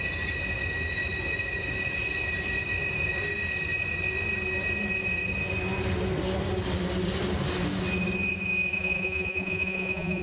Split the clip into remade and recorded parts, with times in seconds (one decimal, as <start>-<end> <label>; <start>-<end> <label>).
0.0-8.7 recorded; 8.7-10.2 remade